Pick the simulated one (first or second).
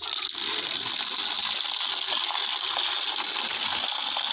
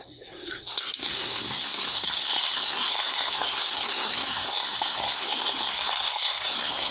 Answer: second